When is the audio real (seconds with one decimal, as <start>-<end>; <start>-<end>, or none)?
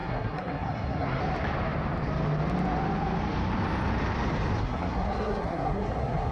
1.2-4.6